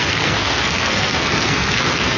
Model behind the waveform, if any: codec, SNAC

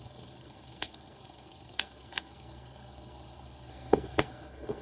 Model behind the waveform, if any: codec, SNAC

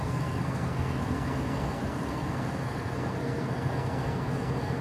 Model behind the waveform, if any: codec, SNAC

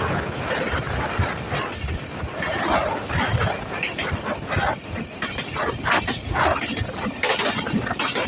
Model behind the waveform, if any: none